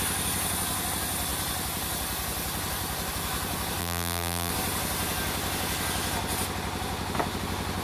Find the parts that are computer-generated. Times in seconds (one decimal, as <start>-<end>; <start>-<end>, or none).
3.8-4.5